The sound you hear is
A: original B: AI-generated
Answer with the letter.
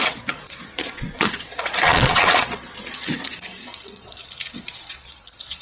B